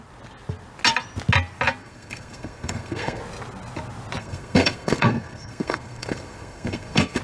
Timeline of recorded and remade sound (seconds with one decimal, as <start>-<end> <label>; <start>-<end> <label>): 0.0-1.8 recorded; 1.8-3.2 remade; 3.2-4.2 recorded; 4.2-7.2 remade